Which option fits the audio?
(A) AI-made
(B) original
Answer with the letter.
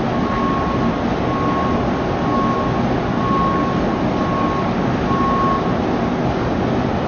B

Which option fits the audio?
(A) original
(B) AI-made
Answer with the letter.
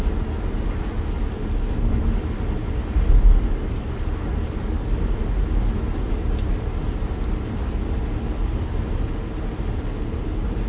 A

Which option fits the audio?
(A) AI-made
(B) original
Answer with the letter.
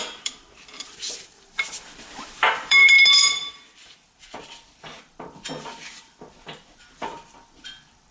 A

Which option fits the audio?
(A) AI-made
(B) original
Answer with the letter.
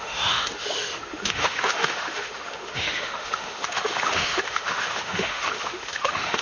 A